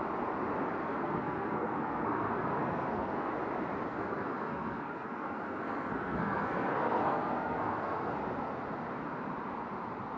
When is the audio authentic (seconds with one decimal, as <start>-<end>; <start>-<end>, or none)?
0.0-0.8; 3.3-3.9; 8.2-10.2